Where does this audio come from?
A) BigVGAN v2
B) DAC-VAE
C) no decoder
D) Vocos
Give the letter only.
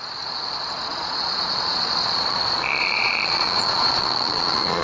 D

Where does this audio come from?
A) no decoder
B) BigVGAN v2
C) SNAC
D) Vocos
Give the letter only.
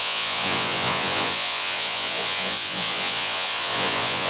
D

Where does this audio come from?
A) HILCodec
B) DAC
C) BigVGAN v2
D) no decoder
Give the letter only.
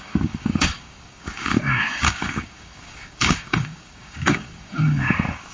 B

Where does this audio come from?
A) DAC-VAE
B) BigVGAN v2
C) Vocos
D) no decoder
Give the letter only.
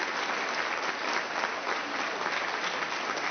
D